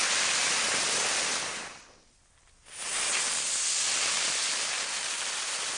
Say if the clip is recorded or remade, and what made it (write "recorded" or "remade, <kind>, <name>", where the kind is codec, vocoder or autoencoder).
recorded